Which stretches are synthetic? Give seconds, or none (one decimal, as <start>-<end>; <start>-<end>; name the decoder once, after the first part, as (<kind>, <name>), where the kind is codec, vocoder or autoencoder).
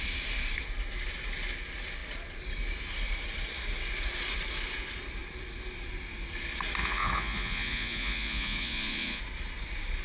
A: 6.8-9.2 (vocoder, Vocos)